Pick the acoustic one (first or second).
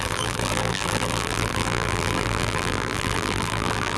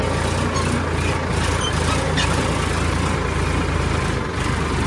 second